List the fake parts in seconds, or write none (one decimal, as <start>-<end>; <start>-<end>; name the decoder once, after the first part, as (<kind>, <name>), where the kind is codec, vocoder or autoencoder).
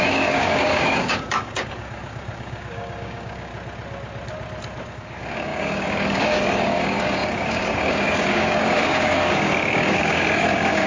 0.0-3.5 (codec, DAC); 4.9-10.9